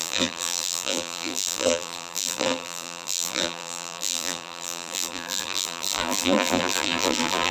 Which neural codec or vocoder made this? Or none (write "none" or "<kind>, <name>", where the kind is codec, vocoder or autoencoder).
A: vocoder, BigVGAN v2